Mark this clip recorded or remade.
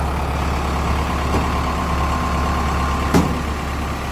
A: recorded